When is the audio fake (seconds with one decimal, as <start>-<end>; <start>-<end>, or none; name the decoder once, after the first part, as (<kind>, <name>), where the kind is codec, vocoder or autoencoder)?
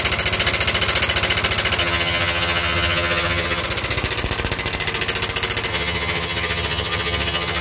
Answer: 1.8-3.6 (vocoder, HiFi-GAN); 5.7-7.6